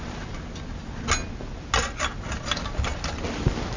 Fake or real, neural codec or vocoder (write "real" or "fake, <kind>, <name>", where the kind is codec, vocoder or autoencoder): real